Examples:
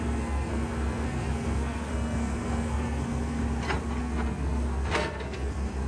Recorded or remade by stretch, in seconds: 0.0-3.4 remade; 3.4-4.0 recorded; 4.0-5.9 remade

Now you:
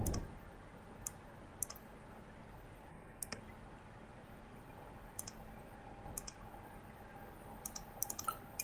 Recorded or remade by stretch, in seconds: 0.0-2.9 recorded; 2.9-3.4 remade; 3.4-8.6 recorded